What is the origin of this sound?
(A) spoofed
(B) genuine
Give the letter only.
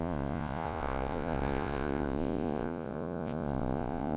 A